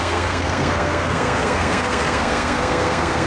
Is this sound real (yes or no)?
no